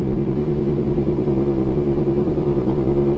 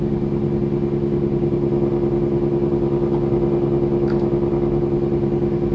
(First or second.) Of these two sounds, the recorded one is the second